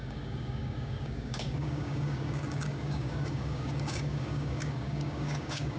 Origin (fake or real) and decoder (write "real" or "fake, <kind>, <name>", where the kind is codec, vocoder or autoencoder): fake, codec, DAC